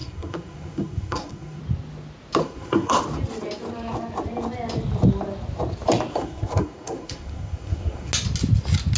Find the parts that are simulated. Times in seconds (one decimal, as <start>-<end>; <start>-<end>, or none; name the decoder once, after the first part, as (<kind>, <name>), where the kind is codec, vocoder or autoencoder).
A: 0.0-1.6 (codec, SNAC); 2.4-3.0; 6.1-8.1